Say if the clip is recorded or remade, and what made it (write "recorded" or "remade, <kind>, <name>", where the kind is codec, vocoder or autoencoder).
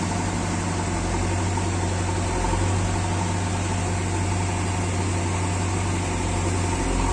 recorded